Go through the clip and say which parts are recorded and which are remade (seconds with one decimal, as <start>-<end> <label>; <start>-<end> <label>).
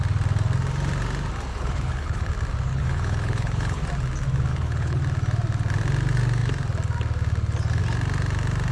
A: 0.0-1.5 recorded; 1.5-2.3 remade; 2.3-2.7 recorded; 2.7-3.8 remade; 3.8-4.5 recorded; 4.5-5.0 remade; 5.0-8.7 recorded